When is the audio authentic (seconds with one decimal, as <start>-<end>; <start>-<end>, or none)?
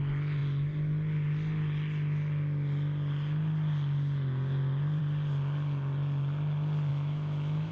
0.0-6.9